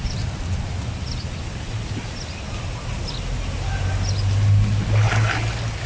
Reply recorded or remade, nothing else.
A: recorded